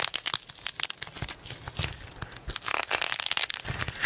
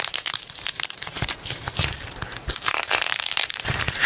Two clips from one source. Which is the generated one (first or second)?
second